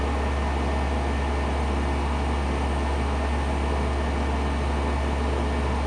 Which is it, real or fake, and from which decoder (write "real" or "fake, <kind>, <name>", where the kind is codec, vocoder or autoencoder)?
real